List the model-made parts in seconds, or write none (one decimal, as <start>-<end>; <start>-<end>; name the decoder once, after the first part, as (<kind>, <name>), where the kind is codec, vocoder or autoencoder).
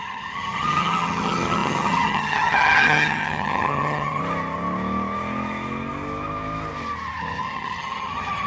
0.0-4.2 (vocoder, HiFi-GAN); 7.4-8.5